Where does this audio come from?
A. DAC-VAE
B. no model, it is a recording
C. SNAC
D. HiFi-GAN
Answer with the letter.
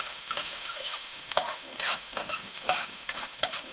A